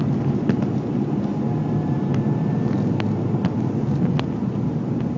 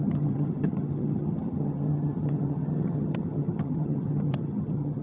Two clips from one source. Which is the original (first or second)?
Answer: first